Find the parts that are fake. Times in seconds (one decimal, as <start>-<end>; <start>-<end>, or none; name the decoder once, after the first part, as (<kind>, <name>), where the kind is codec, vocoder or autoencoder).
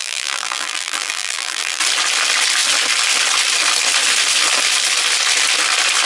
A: 0.0-1.8 (vocoder, BigVGAN v2)